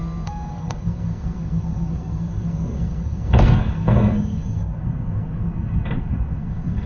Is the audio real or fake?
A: fake